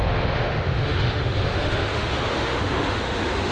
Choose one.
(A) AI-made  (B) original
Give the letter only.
A